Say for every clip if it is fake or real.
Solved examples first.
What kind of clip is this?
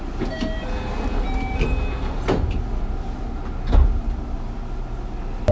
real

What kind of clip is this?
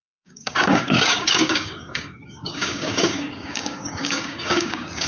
fake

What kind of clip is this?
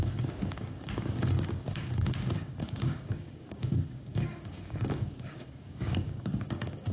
fake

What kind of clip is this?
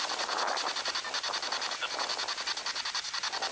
real